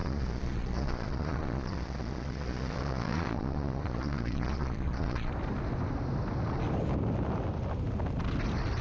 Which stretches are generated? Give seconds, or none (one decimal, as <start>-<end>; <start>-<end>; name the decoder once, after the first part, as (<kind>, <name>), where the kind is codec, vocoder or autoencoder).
0.0-5.3 (vocoder, Vocos)